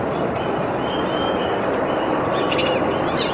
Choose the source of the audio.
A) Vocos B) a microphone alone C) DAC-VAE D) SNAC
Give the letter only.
B